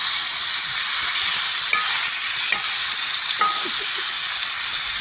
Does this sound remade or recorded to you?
recorded